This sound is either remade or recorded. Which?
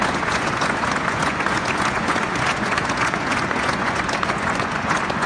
remade